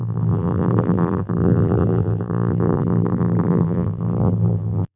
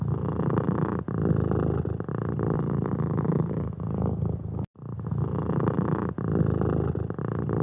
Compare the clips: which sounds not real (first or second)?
first